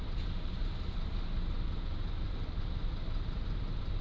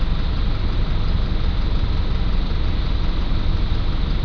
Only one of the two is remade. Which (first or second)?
first